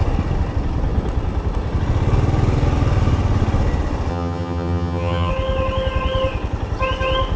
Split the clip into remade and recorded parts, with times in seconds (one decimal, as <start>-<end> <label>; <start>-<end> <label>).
0.0-4.1 recorded; 4.1-5.3 remade; 5.3-7.4 recorded

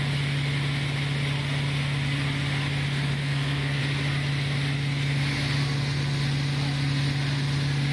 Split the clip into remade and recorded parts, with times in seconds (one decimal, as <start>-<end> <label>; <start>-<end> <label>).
0.0-3.2 recorded; 3.2-3.8 remade; 3.8-7.9 recorded

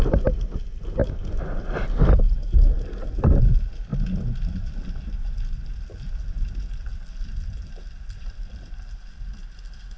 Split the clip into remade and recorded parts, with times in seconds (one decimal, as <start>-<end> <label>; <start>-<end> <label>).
0.0-10.0 recorded

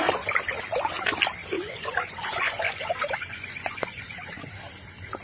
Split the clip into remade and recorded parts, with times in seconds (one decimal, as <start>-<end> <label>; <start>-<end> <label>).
0.0-1.4 recorded; 1.4-4.5 remade; 4.5-5.2 recorded